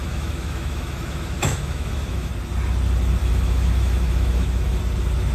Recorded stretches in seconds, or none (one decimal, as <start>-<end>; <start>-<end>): 2.3-3.2; 4.8-5.3